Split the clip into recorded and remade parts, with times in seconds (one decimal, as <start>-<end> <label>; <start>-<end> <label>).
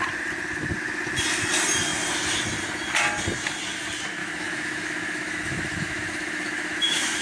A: 0.0-4.2 recorded; 4.2-7.2 remade